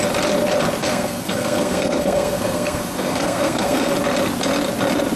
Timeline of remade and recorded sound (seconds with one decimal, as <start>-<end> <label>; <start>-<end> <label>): 0.0-0.8 recorded; 0.8-3.9 remade; 3.9-5.2 recorded